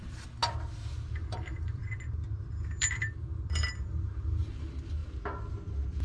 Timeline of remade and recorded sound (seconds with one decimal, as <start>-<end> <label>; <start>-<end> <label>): 0.0-0.4 remade; 0.4-1.1 recorded; 1.1-1.8 remade; 1.8-2.6 recorded; 2.6-5.0 remade; 5.0-6.0 recorded